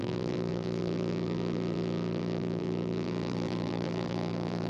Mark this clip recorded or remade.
remade